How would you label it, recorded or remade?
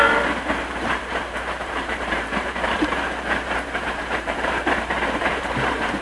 remade